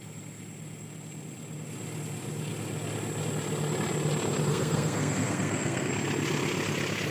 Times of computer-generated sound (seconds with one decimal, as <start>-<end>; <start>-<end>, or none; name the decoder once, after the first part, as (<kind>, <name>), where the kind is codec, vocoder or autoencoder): 4.5-5.9 (codec, SNAC)

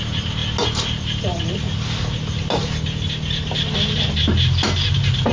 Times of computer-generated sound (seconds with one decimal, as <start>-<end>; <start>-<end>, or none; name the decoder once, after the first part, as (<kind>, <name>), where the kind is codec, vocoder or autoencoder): none

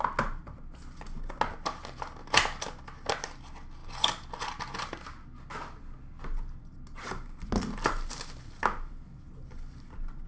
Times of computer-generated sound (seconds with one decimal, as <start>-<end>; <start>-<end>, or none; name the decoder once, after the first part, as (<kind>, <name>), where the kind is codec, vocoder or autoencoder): none

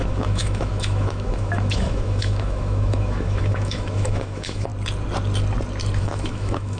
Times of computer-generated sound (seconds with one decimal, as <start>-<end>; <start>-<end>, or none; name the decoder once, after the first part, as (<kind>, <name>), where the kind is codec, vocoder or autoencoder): 0.0-4.7 (autoencoder, DAC-VAE); 6.0-6.8